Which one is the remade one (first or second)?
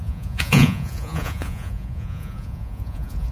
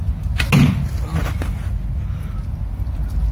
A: first